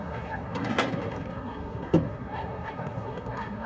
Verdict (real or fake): fake